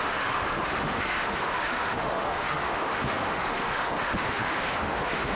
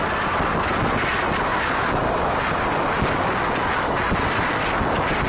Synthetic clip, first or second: first